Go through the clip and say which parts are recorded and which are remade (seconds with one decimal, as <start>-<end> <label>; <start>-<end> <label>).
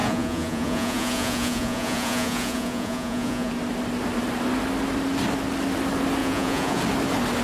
0.0-3.5 remade; 3.5-6.2 recorded; 6.2-6.8 remade; 6.8-7.4 recorded